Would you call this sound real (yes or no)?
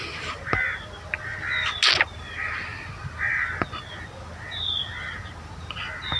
yes